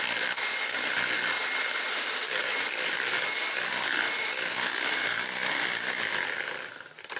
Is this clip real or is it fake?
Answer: real